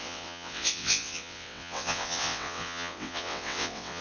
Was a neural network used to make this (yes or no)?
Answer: yes